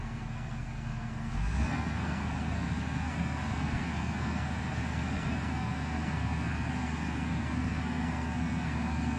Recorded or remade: remade